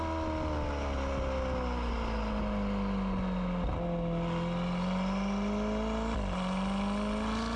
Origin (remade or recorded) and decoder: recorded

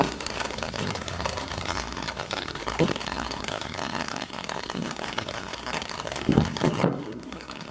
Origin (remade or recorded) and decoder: remade, codec, SNAC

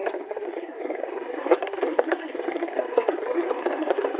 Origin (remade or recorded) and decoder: remade, codec, SNAC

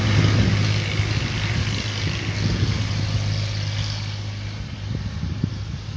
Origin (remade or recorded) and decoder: recorded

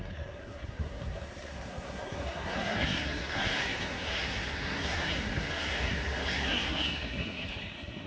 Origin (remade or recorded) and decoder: remade, codec, SNAC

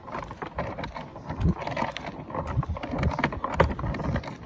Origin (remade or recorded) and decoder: recorded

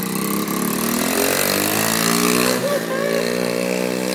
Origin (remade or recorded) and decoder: recorded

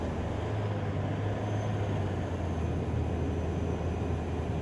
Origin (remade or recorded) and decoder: recorded